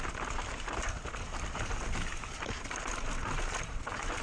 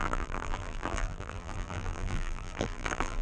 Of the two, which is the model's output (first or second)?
second